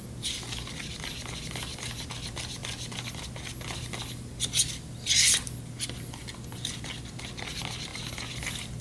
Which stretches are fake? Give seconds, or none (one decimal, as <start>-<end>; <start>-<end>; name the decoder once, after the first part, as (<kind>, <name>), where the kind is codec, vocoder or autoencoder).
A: none